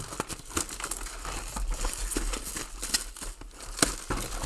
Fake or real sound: real